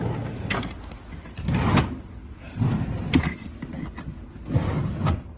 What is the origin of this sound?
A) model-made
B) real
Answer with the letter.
B